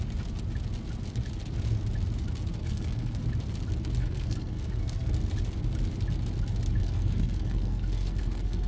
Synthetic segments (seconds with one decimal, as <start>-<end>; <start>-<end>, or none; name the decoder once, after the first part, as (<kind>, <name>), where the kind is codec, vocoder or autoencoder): 2.6-3.2 (codec, SNAC); 4.0-5.2; 6.8-8.7